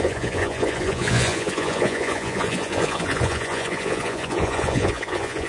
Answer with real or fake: fake